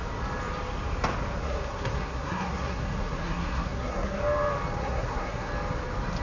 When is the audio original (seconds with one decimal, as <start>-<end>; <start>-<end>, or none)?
0.0-1.4; 4.2-4.8; 5.5-6.2